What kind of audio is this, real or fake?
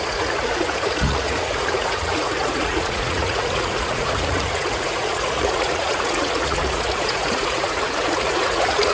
fake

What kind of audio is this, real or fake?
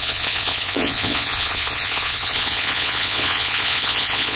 fake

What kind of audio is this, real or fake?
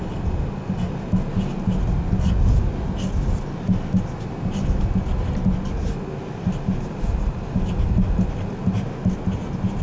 real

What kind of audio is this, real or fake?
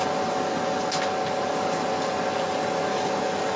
real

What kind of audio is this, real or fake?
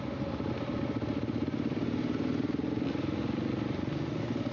real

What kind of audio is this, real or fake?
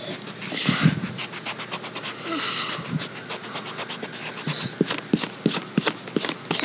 real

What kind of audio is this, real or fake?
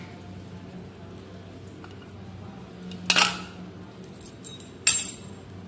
real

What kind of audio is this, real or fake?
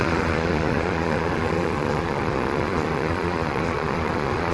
fake